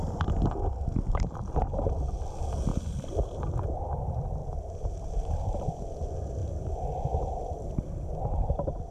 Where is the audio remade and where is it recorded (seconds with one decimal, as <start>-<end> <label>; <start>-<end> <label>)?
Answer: 0.0-4.4 recorded; 4.4-5.7 remade; 5.7-8.9 recorded